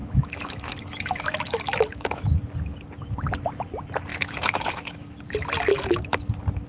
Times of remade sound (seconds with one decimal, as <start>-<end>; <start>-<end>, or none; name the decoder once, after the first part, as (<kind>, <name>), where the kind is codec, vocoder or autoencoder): 0.0-2.2 (autoencoder, DAC-VAE); 4.1-5.2; 5.7-6.2